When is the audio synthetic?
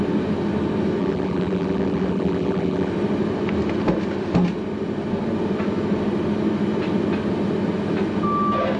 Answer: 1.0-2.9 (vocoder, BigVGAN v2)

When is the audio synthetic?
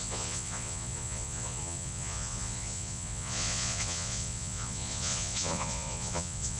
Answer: 0.0-6.6 (vocoder, Vocos)